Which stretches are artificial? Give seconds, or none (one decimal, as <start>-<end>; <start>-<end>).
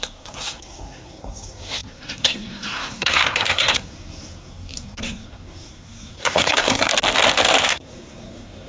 0.0-6.9; 7.7-8.7